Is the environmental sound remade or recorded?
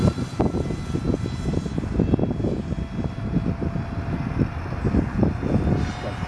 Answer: recorded